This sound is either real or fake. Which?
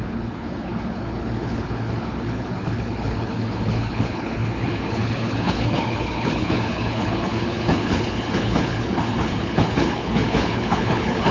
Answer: fake